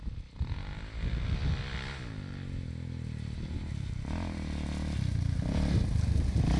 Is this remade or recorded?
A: recorded